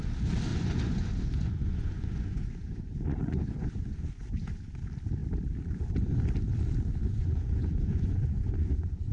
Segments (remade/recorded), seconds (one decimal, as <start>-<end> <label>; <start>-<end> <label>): 0.0-0.5 recorded; 0.5-4.2 remade; 4.2-7.2 recorded; 7.2-9.1 remade